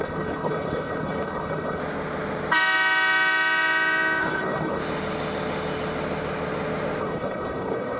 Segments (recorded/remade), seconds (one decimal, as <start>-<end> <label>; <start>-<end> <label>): 0.0-1.8 remade; 1.8-4.2 recorded; 4.2-4.8 remade; 4.8-7.0 recorded; 7.0-8.0 remade